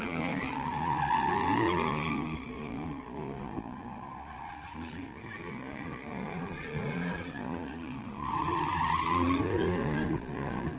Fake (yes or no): yes